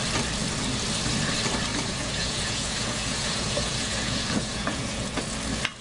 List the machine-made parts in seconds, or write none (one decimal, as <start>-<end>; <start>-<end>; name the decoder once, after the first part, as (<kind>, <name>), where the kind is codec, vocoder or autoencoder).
1.7-5.2 (vocoder, Vocos)

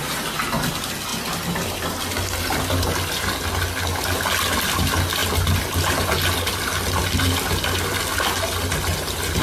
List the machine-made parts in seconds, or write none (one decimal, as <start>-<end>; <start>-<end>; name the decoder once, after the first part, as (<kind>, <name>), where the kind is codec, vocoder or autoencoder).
none